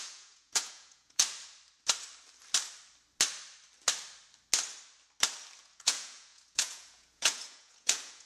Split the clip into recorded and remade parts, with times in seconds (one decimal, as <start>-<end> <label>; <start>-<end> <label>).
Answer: 0.0-1.2 remade; 1.2-5.6 recorded; 5.6-8.3 remade